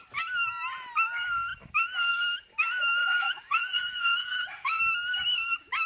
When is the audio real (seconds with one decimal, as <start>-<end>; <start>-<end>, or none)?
0.0-3.0; 4.8-5.9